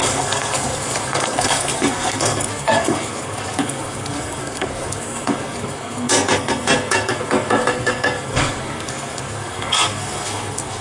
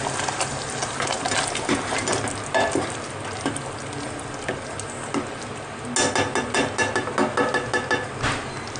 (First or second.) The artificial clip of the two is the first